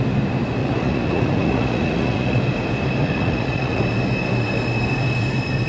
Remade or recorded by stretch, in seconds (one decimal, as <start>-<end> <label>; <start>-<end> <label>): 0.0-0.6 recorded; 0.6-2.4 remade; 2.4-3.0 recorded; 3.0-3.8 remade; 3.8-5.7 recorded